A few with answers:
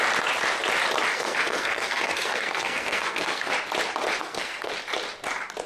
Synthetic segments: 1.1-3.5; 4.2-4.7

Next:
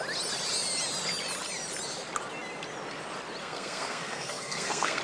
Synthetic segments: 3.4-5.0